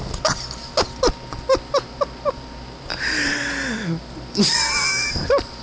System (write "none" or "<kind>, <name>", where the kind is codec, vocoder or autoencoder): none